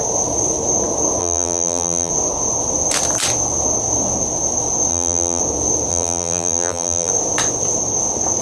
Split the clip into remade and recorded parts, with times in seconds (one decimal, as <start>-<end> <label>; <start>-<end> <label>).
0.0-1.2 recorded; 1.2-2.1 remade; 2.1-4.9 recorded; 4.9-5.4 remade; 5.4-5.9 recorded; 5.9-7.1 remade; 7.1-8.4 recorded

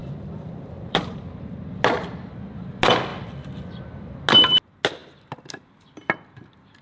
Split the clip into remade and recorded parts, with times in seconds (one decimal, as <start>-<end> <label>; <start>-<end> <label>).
0.0-1.8 remade; 1.8-6.8 recorded